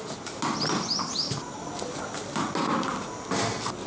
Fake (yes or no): no